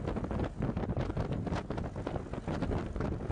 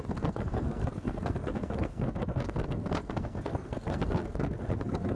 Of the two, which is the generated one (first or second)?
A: second